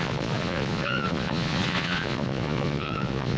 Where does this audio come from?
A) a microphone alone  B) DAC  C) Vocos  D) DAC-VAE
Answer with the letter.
C